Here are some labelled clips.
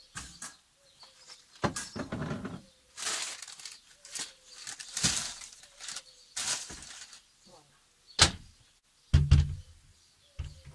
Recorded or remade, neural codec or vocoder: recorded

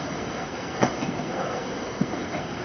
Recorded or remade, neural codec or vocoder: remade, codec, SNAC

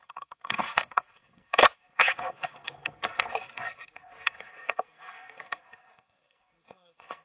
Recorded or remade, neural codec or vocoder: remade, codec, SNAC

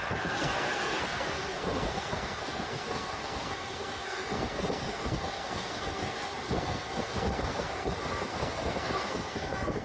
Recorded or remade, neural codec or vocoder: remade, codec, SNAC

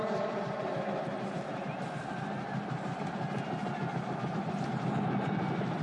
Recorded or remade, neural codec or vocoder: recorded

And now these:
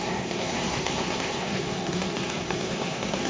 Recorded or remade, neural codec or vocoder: remade, codec, SNAC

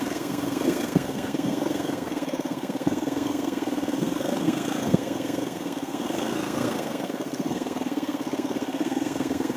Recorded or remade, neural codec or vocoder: remade, codec, SNAC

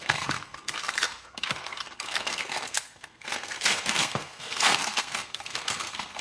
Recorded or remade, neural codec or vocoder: remade, codec, SNAC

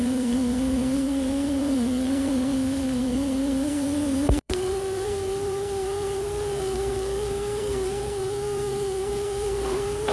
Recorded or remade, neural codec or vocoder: remade, codec, SNAC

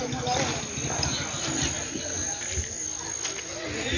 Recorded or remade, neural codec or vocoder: recorded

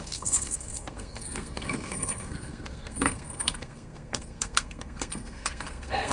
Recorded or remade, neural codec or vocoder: remade, codec, SNAC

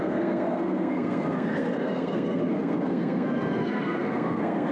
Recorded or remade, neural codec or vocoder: remade, codec, SNAC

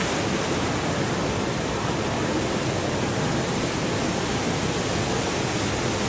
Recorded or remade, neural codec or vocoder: recorded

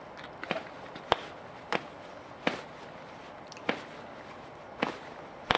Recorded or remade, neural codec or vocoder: recorded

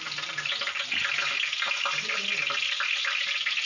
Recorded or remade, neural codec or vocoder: recorded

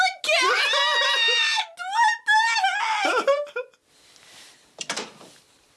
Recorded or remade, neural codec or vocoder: recorded